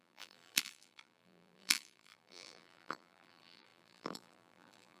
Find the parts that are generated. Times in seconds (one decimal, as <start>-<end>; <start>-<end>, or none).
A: 0.0-5.0

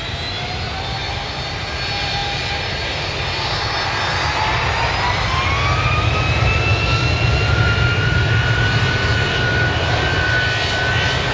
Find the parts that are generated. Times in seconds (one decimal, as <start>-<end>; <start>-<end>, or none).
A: none

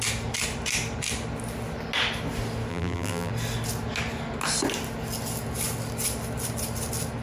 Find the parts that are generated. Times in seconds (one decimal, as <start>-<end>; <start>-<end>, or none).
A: 2.7-3.3

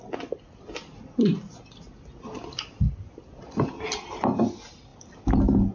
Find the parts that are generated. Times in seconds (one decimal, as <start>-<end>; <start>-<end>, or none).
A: none

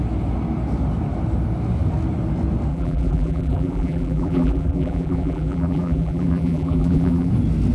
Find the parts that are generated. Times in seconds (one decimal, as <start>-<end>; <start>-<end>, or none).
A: 2.7-7.3

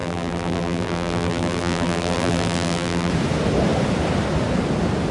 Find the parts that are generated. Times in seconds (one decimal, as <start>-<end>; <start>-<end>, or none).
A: 0.0-3.1